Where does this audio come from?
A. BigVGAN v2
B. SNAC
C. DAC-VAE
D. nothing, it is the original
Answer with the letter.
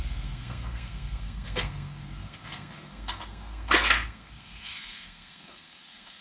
B